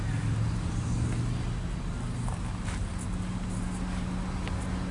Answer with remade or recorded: recorded